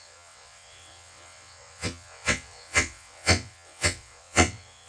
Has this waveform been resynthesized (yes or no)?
yes